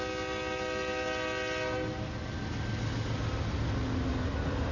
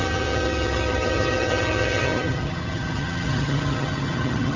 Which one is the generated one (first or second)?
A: second